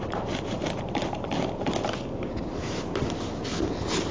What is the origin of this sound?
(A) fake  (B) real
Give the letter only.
B